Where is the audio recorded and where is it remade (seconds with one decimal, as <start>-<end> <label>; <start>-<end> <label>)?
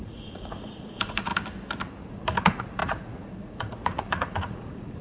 0.0-1.3 remade; 1.3-2.1 recorded; 2.1-5.0 remade